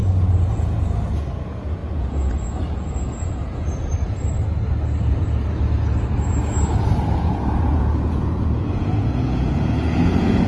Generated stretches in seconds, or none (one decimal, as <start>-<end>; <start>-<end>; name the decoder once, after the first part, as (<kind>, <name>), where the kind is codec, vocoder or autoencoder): 0.5-3.9 (vocoder, Vocos); 7.1-10.5